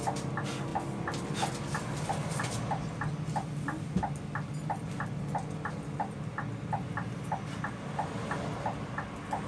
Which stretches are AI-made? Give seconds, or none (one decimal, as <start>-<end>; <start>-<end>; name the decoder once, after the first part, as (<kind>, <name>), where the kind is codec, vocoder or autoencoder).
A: none